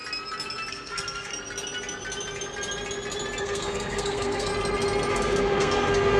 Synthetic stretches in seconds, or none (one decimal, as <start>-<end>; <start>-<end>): 0.7-1.3; 3.4-4.5; 5.1-6.2